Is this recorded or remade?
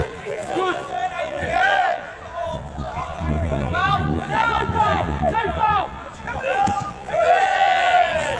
remade